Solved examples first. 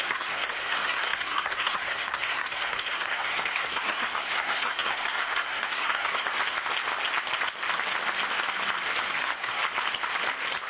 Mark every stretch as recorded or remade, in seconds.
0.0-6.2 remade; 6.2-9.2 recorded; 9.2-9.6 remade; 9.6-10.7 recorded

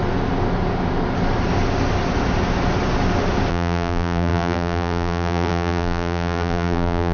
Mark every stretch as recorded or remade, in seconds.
0.0-3.5 recorded; 3.5-7.1 remade

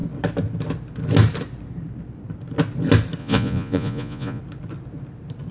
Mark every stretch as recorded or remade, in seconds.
0.0-3.2 recorded; 3.2-4.4 remade; 4.4-5.5 recorded